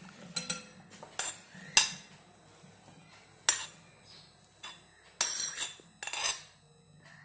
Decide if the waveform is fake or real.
real